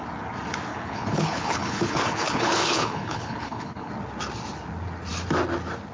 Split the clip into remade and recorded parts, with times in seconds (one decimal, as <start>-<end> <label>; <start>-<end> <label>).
0.0-0.7 recorded; 0.7-3.9 remade; 3.9-5.9 recorded